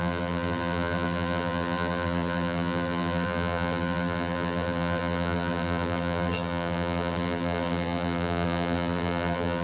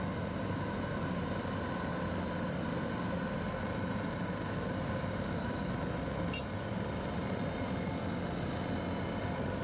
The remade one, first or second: first